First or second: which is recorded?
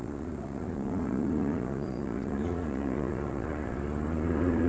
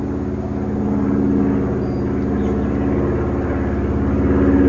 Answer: second